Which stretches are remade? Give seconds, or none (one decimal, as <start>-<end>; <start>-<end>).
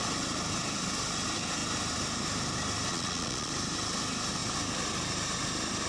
2.9-3.5